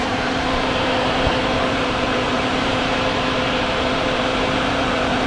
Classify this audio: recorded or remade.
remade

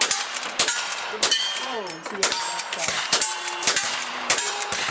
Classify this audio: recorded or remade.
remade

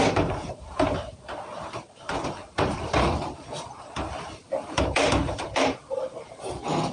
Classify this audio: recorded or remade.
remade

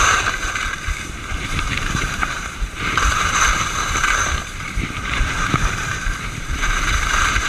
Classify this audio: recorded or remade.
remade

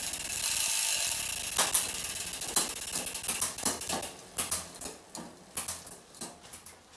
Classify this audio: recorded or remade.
recorded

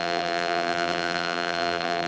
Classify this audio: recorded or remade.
remade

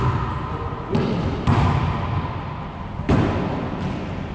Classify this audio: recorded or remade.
recorded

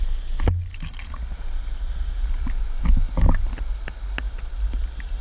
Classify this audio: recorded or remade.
recorded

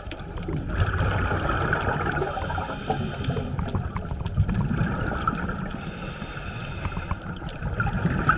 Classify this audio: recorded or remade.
recorded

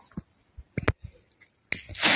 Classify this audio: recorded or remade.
recorded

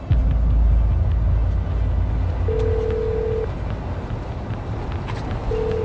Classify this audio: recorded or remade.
recorded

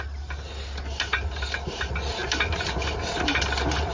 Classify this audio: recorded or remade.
recorded